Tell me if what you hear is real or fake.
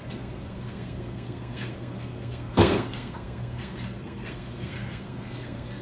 fake